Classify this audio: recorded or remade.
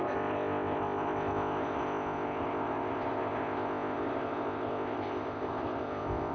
remade